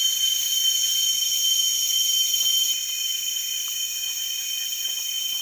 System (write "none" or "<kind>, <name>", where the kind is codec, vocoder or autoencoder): none